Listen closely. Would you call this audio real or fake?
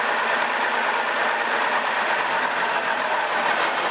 real